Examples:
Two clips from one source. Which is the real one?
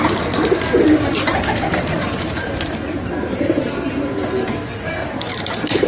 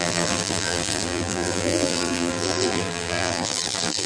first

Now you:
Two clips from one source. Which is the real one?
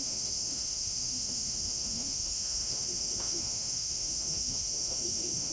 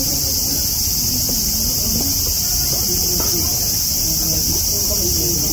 second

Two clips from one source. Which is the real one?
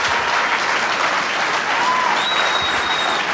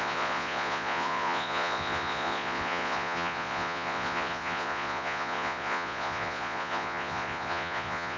first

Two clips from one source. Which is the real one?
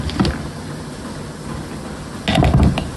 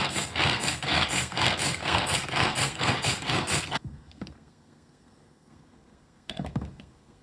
first